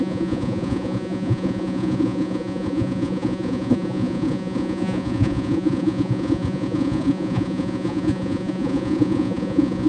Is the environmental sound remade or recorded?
remade